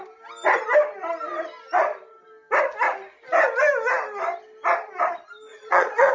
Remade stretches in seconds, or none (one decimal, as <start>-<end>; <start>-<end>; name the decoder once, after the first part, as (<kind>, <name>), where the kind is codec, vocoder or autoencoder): 5.5-6.1 (vocoder, Vocos)